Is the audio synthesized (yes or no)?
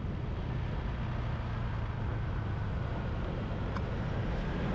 no